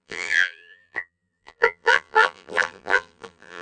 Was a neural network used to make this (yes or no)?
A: yes